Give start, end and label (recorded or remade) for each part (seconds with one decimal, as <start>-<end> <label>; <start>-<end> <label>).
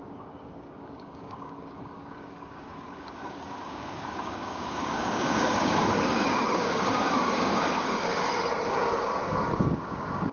0.0-8.1 remade; 8.1-8.7 recorded; 8.7-10.3 remade